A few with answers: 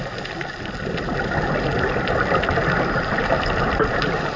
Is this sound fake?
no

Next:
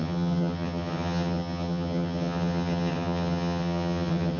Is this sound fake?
yes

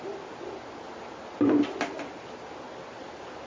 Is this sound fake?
no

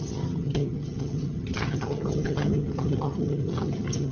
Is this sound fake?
yes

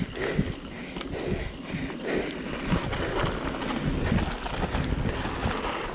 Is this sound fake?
no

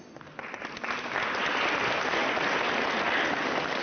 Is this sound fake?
no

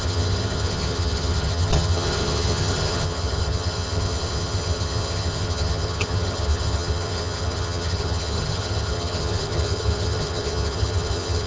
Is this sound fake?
yes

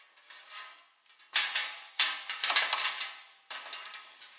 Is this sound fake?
no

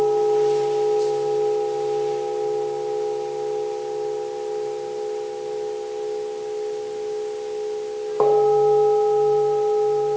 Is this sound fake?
no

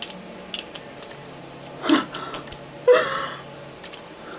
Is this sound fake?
no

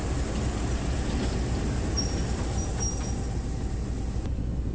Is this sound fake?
no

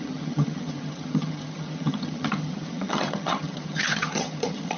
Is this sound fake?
yes